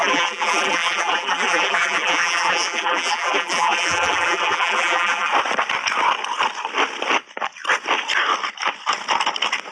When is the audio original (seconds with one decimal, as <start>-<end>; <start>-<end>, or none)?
5.3-9.7